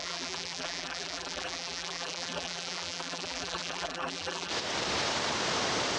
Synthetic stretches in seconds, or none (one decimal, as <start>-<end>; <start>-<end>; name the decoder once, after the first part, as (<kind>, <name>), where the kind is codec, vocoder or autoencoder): 0.0-4.5 (vocoder, BigVGAN v2)